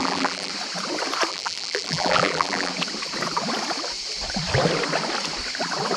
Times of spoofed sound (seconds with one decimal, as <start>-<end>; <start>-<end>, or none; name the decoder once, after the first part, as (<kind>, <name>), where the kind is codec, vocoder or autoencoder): 0.0-0.5 (vocoder, BigVGAN v2); 1.3-2.7

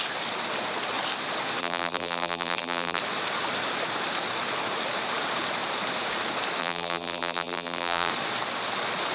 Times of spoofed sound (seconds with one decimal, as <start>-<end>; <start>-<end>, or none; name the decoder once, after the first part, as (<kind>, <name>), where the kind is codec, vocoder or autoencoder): 1.6-3.0 (vocoder, BigVGAN v2); 6.6-8.1

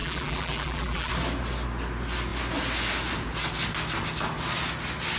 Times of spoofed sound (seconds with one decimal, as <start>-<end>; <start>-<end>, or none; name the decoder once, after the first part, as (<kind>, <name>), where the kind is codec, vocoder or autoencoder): 0.0-1.1 (vocoder, BigVGAN v2)

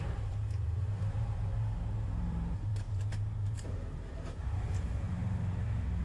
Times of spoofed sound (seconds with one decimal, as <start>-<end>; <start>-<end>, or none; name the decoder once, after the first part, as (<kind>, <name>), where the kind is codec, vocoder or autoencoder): 0.0-5.2 (vocoder, BigVGAN v2)

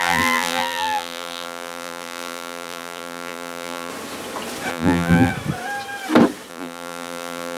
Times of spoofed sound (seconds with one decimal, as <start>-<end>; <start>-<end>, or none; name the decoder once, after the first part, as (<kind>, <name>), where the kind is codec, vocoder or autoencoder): 0.0-3.9 (vocoder, BigVGAN v2); 4.7-5.3; 6.5-7.6

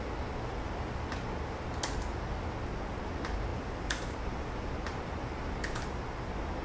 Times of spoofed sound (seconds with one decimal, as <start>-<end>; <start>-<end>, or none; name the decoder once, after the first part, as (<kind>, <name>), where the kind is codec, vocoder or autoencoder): 3.5-4.5 (vocoder, BigVGAN v2)